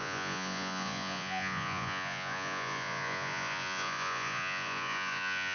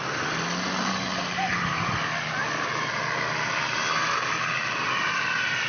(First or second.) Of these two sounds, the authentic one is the second